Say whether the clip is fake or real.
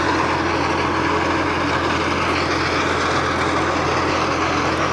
real